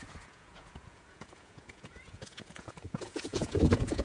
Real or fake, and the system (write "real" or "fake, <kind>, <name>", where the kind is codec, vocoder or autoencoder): fake, vocoder, Vocos